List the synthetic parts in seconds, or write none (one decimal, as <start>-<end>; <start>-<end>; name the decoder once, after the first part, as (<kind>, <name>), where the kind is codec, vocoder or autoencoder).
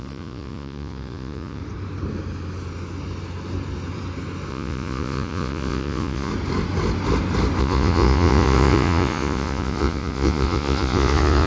0.0-1.6 (vocoder, Vocos); 4.5-6.3; 7.6-11.5